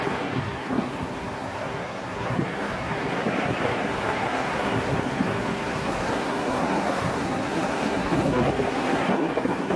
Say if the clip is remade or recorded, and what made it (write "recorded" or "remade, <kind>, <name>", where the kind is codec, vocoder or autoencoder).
remade, codec, SNAC